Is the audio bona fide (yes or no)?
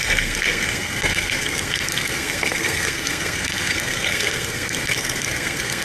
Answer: no